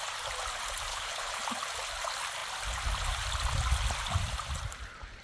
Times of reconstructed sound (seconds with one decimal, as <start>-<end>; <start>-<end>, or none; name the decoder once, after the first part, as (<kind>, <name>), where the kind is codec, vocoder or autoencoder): 0.9-1.4 (codec, HILCodec)